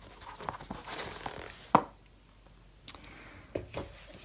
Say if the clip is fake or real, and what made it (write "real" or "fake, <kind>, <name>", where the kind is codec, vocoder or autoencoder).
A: real